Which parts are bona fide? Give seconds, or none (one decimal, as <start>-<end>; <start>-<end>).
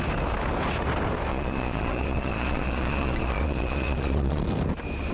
0.0-1.3; 4.4-5.1